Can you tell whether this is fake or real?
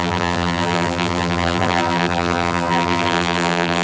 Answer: fake